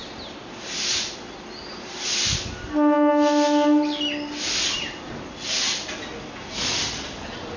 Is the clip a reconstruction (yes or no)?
no